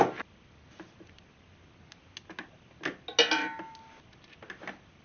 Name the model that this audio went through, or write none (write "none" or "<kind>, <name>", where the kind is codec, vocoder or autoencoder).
none